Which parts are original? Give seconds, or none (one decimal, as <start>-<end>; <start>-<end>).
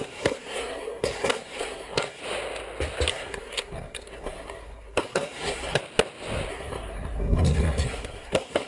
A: 2.2-3.1; 5.8-6.5